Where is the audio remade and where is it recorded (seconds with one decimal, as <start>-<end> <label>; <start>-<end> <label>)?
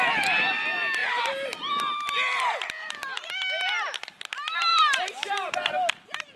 0.0-1.0 recorded; 1.0-1.7 remade; 1.7-2.8 recorded; 2.8-3.3 remade; 3.3-4.7 recorded; 4.7-5.7 remade; 5.7-6.4 recorded